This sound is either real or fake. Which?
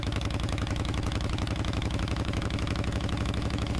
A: fake